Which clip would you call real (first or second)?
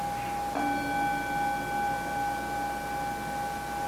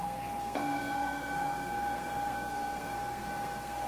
first